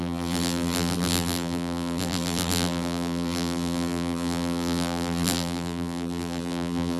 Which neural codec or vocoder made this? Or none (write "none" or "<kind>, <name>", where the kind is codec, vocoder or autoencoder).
vocoder, BigVGAN v2